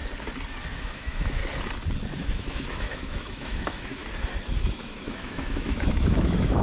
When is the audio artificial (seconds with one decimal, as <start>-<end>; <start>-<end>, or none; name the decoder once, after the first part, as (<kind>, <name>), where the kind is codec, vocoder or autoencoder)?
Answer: 0.8-1.4 (autoencoder, DAC-VAE); 2.1-4.0; 4.7-6.6